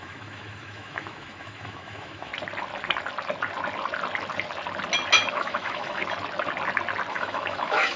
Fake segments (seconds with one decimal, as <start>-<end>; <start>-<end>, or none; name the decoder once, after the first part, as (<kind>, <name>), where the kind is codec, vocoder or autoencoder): 0.0-2.3 (autoencoder, DAC-VAE); 5.3-6.0; 7.1-8.0